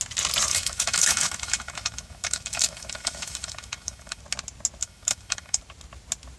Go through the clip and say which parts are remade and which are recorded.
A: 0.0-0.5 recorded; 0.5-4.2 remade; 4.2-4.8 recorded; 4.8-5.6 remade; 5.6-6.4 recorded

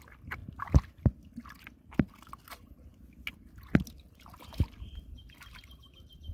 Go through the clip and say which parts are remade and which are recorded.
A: 0.0-6.3 recorded

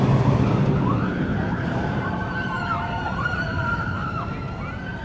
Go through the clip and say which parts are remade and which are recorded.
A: 0.0-1.3 recorded; 1.3-4.3 remade; 4.3-5.0 recorded

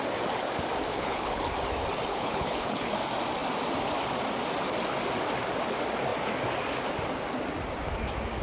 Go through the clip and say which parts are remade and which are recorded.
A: 0.0-0.9 recorded; 0.9-1.4 remade; 1.4-2.1 recorded; 2.1-2.9 remade; 2.9-8.4 recorded

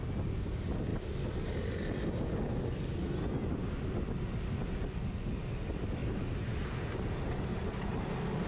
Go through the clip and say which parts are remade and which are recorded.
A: 0.0-6.0 recorded; 6.0-7.2 remade; 7.2-8.5 recorded

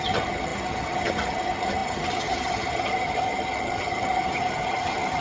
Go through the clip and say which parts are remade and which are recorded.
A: 0.0-5.2 remade

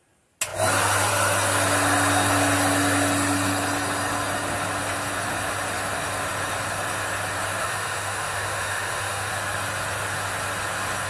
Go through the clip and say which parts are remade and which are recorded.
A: 0.0-7.6 recorded; 7.6-9.3 remade; 9.3-11.1 recorded